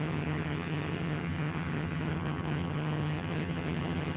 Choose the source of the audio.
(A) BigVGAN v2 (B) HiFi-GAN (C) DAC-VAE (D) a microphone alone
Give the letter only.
B